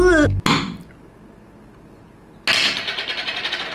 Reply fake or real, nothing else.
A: real